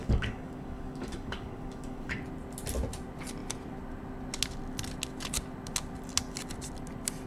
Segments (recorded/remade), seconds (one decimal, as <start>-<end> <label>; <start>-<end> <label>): 0.0-2.2 remade; 2.2-7.3 recorded